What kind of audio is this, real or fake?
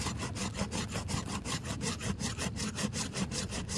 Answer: real